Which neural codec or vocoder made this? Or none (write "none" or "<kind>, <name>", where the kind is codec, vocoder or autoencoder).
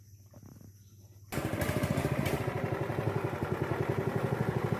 none